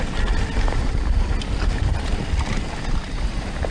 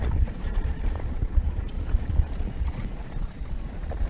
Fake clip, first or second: second